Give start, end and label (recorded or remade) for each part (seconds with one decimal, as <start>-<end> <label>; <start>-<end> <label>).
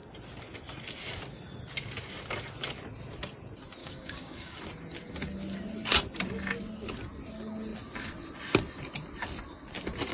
0.0-3.8 recorded; 3.8-4.6 remade; 4.6-10.1 recorded